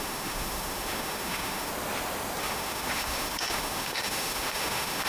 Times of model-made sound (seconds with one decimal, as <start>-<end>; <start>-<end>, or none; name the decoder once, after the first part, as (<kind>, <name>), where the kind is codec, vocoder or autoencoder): 0.0-1.7 (autoencoder, DAC-VAE); 2.4-5.1